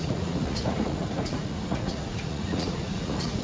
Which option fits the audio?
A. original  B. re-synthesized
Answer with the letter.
B